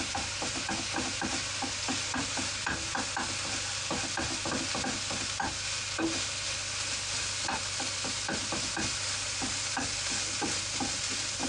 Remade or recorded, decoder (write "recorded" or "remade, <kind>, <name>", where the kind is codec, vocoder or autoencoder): recorded